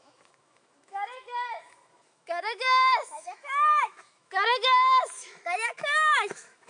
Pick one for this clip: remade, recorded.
remade